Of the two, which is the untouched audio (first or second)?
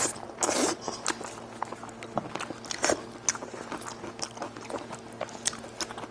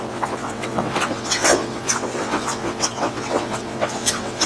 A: first